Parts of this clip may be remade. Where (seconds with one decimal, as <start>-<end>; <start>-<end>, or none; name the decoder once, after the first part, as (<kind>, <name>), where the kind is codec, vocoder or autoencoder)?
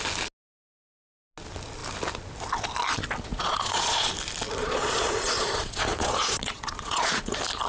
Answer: 3.3-4.1 (vocoder, Vocos); 4.6-7.3